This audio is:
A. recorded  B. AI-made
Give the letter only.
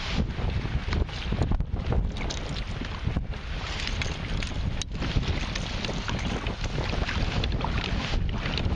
A